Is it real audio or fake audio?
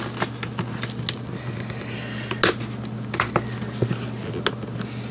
real